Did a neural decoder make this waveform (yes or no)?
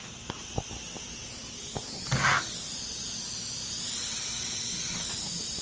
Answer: no